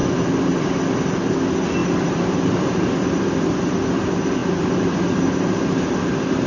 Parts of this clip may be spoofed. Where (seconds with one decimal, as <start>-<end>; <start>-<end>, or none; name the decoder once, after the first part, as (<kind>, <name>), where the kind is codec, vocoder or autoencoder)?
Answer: 1.8-3.5 (vocoder, BigVGAN v2); 4.4-6.5